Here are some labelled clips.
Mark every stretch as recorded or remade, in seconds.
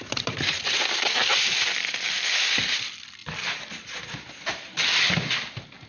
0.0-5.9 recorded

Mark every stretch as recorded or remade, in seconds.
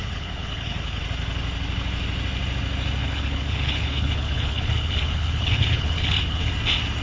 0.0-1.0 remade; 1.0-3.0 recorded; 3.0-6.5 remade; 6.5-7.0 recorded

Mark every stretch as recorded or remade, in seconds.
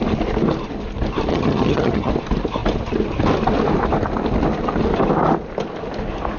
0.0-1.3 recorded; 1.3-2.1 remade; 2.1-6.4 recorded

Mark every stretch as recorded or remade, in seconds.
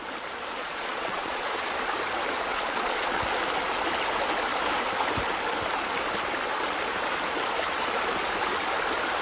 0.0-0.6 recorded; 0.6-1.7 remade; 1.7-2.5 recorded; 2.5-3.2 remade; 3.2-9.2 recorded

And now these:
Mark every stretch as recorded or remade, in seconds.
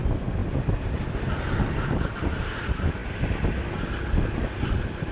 0.0-5.1 recorded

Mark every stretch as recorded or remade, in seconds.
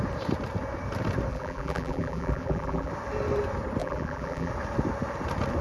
0.0-1.3 recorded; 1.3-2.9 remade; 2.9-3.8 recorded; 3.8-4.5 remade; 4.5-5.6 recorded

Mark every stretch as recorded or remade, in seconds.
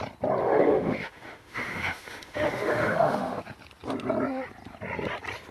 0.0-0.4 recorded; 0.4-3.4 remade; 3.4-5.5 recorded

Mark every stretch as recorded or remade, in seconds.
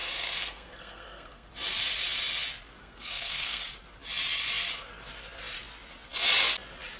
0.0-1.5 remade; 1.5-2.8 recorded; 2.8-3.6 remade; 3.6-7.0 recorded